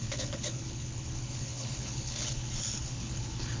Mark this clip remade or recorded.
remade